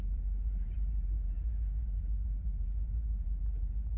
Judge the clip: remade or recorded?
remade